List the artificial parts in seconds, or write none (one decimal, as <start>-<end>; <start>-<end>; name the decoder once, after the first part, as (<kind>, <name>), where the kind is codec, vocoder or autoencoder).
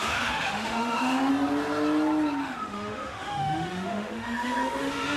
0.0-1.3 (autoencoder, DAC-VAE); 2.4-5.2